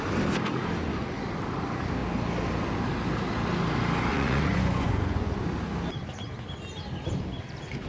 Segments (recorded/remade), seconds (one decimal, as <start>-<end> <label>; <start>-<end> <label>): 0.0-4.1 recorded; 4.1-5.3 remade; 5.3-7.9 recorded